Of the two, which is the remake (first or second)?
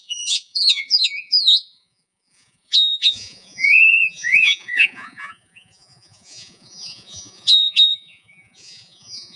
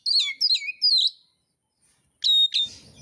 first